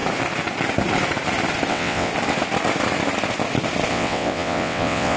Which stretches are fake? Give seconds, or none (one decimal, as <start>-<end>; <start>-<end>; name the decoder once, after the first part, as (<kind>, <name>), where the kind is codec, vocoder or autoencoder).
1.7-2.1 (vocoder, WaveNeXt); 3.9-5.2